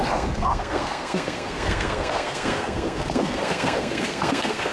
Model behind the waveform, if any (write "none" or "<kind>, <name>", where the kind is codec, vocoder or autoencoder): codec, SNAC